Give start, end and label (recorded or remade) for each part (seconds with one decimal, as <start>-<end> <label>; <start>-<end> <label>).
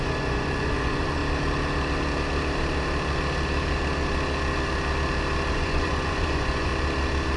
0.0-1.2 remade; 1.2-5.5 recorded; 5.5-6.7 remade; 6.7-7.4 recorded